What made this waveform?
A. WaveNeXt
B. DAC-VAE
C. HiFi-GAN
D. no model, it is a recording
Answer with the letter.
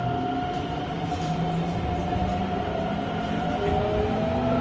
D